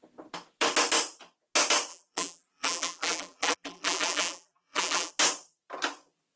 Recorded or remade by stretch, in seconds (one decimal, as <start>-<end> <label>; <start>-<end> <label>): 0.0-1.9 recorded; 1.9-5.1 remade; 5.1-6.4 recorded